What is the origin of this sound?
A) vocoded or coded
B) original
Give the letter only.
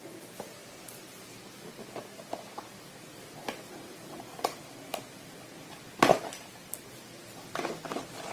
B